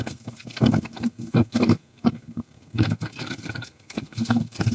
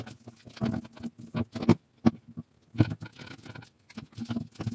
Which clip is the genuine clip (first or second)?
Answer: second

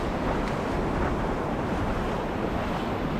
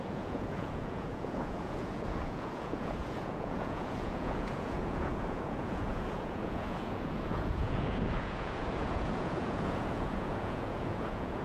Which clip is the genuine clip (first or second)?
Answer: first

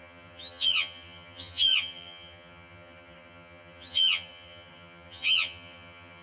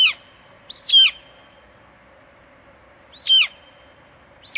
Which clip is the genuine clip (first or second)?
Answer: second